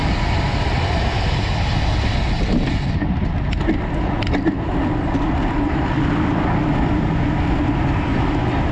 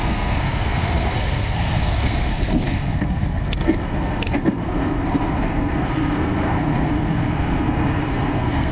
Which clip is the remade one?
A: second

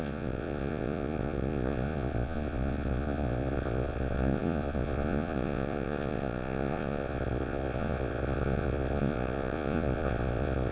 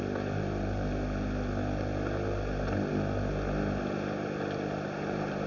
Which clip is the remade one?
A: first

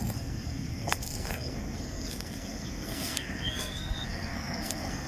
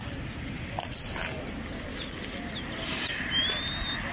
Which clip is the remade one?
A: first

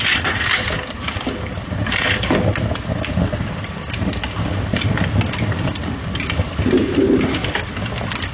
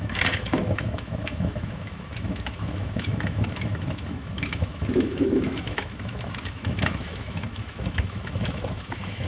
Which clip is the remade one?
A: second